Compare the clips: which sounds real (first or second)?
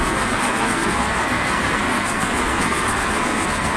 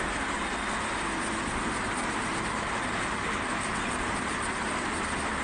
second